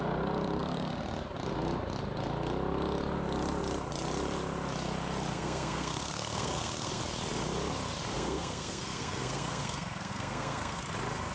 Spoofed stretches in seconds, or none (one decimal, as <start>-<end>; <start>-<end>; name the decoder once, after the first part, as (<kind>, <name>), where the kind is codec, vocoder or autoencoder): 5.3-7.0 (codec, SNAC); 8.1-10.8